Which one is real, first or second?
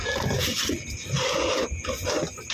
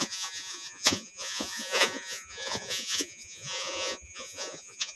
first